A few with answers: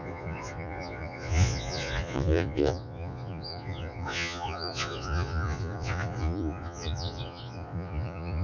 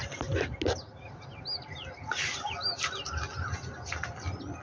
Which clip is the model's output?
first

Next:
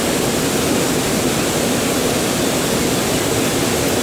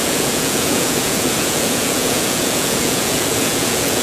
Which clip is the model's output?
second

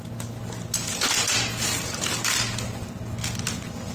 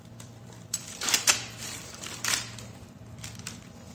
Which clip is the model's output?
second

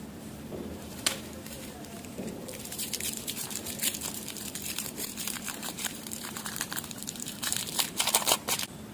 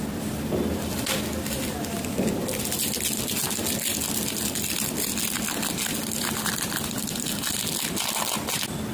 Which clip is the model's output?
first